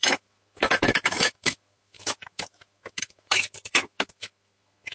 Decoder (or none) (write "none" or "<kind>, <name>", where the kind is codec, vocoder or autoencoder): autoencoder, DAC-VAE